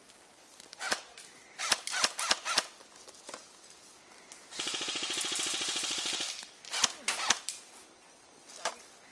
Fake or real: real